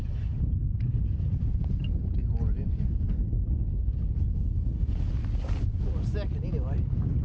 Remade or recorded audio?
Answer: recorded